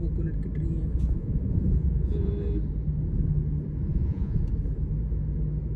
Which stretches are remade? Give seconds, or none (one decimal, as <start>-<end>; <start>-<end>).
0.9-2.3; 3.9-4.4